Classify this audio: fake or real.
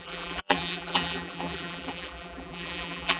fake